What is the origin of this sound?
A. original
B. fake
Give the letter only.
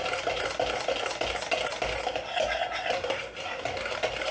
A